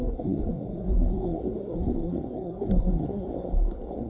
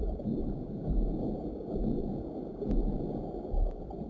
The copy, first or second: first